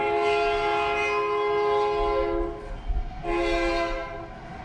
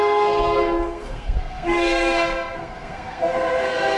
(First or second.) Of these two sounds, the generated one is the second